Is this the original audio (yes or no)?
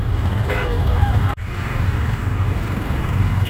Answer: no